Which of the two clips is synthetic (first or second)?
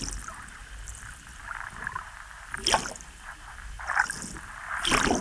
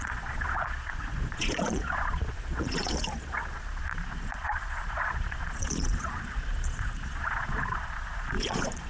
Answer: second